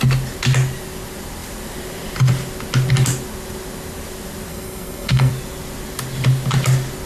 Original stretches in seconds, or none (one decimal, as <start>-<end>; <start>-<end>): 0.0-4.5; 5.3-7.1